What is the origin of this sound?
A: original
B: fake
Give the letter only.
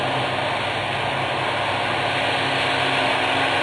A